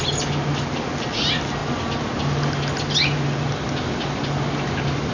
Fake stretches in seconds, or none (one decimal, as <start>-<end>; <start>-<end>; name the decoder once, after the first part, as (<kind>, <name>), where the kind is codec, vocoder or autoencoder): none